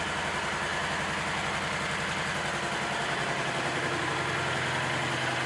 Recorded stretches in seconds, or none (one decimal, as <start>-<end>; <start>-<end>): 0.0-5.5

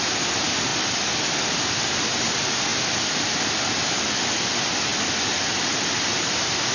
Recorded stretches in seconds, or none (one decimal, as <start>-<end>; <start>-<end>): 0.0-0.7; 2.2-2.7; 3.7-4.9; 5.8-6.7

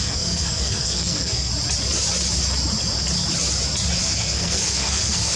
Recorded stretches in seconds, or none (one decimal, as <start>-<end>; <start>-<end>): 1.5-4.0

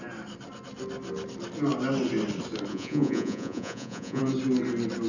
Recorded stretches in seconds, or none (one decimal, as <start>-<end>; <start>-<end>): 0.0-2.7; 4.2-5.1

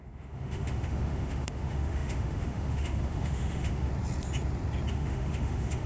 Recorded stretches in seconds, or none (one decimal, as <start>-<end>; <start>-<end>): 3.9-4.9

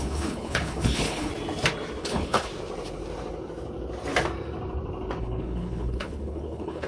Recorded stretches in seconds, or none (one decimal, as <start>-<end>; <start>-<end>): 1.3-2.0; 2.5-5.2

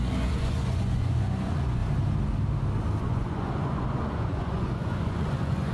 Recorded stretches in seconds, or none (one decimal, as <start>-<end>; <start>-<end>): 1.8-3.0

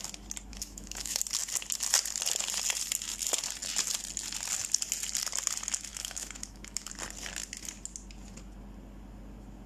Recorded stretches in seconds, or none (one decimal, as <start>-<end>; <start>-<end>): 0.0-0.5; 1.2-5.9; 6.9-9.7